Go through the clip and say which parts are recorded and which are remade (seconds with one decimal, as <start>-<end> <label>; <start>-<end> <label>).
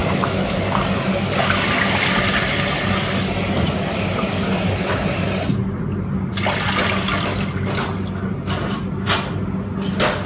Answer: 0.0-0.6 remade; 0.6-10.3 recorded